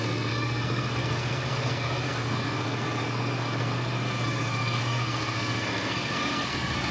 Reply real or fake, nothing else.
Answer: fake